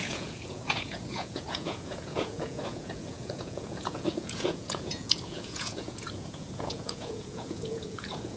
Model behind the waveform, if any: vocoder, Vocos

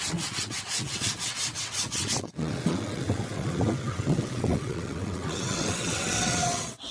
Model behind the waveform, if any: vocoder, WaveNeXt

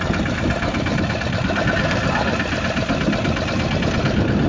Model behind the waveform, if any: none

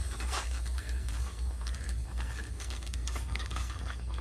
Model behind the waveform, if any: codec, SNAC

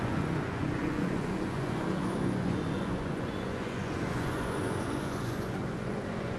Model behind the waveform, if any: vocoder, Vocos